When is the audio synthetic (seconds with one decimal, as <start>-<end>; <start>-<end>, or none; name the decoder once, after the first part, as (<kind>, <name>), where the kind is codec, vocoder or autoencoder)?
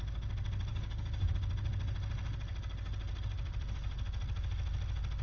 0.7-1.3 (codec, DAC)